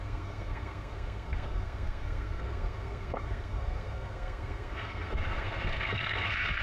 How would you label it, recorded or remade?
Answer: remade